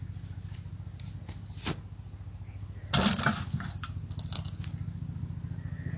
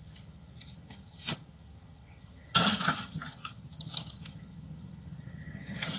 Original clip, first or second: first